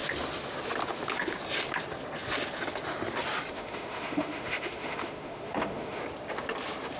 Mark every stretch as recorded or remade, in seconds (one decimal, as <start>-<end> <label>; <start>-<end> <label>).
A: 0.0-3.5 recorded; 3.5-6.0 remade; 6.0-7.0 recorded